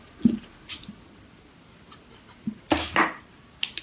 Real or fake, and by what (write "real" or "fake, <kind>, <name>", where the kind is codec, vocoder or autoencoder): real